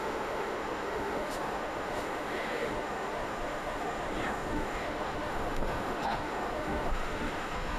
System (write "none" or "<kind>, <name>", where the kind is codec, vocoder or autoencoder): autoencoder, DAC-VAE